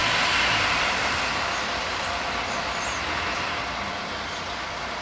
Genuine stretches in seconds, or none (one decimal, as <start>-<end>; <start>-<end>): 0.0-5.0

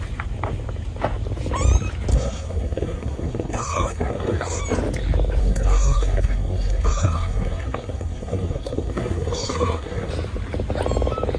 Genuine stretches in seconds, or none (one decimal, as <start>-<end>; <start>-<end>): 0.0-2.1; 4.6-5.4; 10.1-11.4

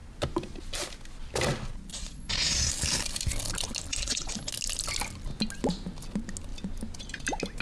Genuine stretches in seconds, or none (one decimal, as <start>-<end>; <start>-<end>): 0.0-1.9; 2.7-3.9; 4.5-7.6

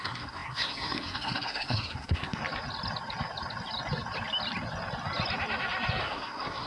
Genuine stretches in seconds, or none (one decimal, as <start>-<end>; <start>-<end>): 2.4-6.0

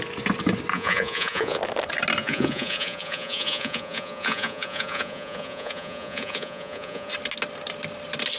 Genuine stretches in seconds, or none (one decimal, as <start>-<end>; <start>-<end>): 0.0-0.7; 1.6-2.2; 7.1-8.4